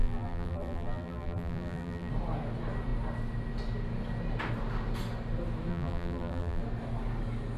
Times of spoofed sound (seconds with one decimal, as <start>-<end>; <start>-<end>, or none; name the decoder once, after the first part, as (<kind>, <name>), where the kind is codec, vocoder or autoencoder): 0.0-2.1 (vocoder, BigVGAN v2); 5.7-6.6